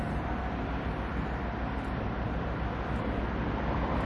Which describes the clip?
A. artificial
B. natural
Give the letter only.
B